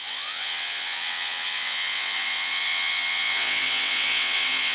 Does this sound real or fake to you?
fake